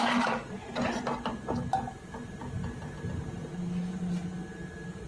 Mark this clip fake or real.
real